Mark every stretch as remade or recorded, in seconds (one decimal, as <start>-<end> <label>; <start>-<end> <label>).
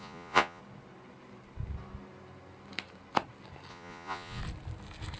0.0-0.6 remade; 0.6-3.7 recorded; 3.7-4.4 remade; 4.4-5.2 recorded